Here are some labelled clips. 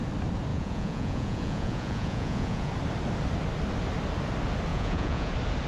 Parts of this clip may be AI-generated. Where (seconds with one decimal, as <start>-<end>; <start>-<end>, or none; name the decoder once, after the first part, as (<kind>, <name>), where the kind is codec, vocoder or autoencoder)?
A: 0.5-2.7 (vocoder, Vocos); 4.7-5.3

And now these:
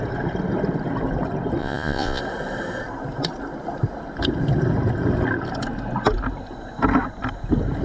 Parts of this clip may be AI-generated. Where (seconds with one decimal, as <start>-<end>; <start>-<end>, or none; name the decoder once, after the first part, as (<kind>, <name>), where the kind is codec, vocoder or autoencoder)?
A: 1.6-2.2 (vocoder, Vocos)

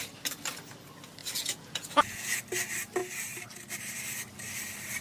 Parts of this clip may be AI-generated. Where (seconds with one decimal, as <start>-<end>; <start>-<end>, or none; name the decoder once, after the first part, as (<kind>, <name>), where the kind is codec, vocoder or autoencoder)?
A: 1.2-2.4 (vocoder, Vocos)

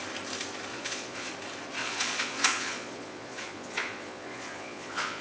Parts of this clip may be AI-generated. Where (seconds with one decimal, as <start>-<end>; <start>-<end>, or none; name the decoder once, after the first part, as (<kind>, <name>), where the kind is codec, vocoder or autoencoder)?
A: 0.7-1.3 (vocoder, Vocos); 1.8-5.2

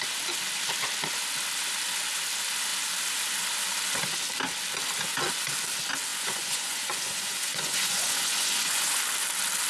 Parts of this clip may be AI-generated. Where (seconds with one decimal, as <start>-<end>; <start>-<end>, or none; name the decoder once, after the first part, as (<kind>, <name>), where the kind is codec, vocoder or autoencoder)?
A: 6.1-9.0 (vocoder, Vocos)